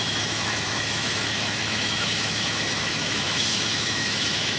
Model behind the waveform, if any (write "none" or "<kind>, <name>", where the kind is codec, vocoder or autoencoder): autoencoder, DAC-VAE